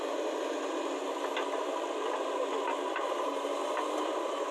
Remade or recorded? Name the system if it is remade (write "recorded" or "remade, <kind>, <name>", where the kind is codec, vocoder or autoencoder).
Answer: recorded